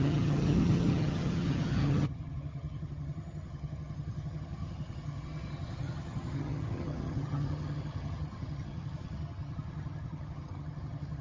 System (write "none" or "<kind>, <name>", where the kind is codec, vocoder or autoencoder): vocoder, HiFi-GAN